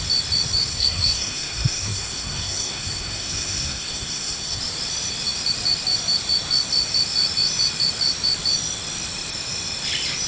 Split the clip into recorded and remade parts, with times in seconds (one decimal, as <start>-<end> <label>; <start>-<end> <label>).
0.0-0.7 recorded; 0.7-4.6 remade; 4.6-10.3 recorded